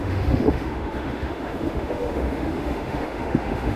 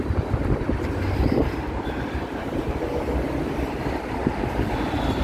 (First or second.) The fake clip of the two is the first